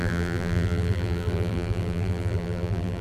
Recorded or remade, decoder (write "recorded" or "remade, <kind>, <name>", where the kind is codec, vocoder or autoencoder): remade, vocoder, BigVGAN v2